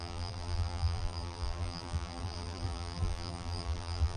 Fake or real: fake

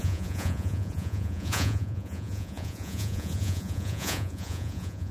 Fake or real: fake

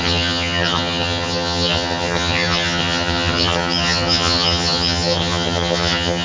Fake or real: fake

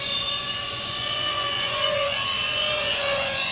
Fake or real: fake